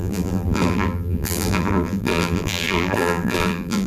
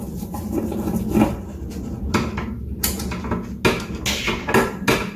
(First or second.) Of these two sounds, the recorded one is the second